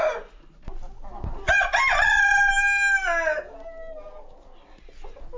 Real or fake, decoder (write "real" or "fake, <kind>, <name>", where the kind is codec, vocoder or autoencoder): real